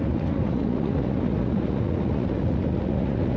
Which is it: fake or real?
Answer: fake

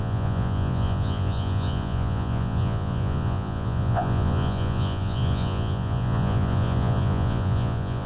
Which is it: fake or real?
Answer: fake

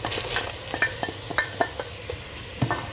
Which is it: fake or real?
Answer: real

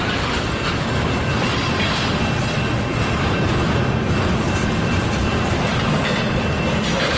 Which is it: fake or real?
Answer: real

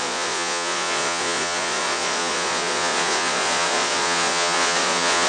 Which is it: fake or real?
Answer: fake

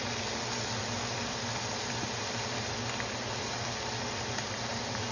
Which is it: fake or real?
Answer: real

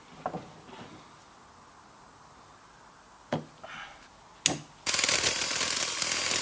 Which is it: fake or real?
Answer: real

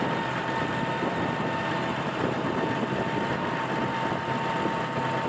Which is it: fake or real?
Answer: real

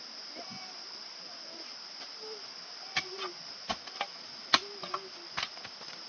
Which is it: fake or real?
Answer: real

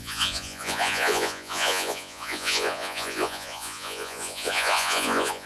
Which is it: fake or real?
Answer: fake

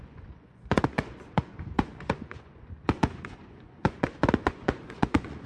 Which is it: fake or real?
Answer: fake